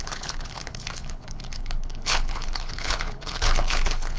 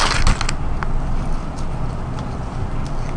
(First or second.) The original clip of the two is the second